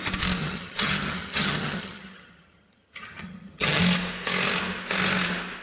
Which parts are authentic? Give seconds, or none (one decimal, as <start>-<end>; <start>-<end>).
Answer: 0.0-0.4; 3.8-5.6